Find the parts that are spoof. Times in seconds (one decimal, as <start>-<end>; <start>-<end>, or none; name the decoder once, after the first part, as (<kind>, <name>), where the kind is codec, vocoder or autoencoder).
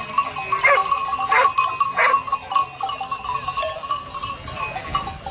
none